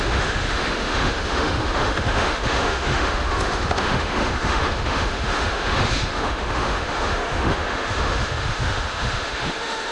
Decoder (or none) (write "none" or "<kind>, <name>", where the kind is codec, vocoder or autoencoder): autoencoder, DAC-VAE